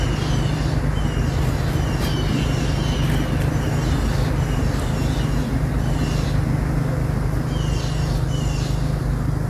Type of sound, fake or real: real